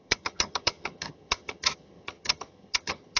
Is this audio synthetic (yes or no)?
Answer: yes